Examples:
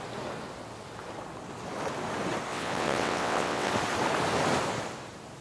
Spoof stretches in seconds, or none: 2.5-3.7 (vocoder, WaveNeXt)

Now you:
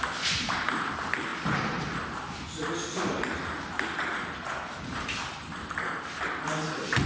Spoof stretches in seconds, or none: none